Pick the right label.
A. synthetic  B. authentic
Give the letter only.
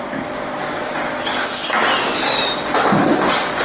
B